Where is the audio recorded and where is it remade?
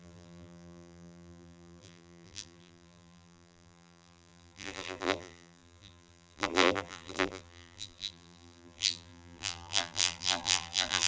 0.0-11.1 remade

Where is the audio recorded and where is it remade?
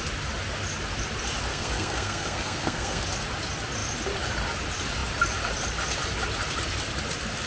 0.0-1.5 recorded; 1.5-3.0 remade; 3.0-7.5 recorded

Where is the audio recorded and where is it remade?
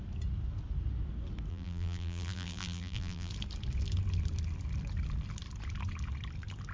0.0-1.5 recorded; 1.5-3.3 remade; 3.3-6.7 recorded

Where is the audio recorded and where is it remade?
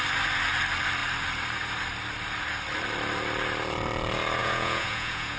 0.0-4.4 recorded; 4.4-5.4 remade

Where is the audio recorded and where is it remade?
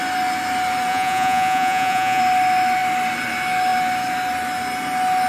0.0-0.9 recorded; 0.9-2.2 remade; 2.2-5.3 recorded